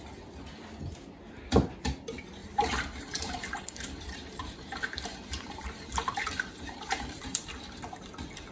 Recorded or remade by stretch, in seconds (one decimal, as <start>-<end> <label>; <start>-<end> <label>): 0.0-2.4 recorded; 2.4-7.5 remade; 7.5-8.5 recorded